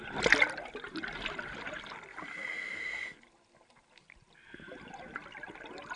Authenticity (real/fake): real